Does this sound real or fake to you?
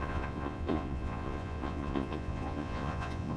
fake